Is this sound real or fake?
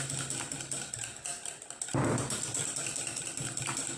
real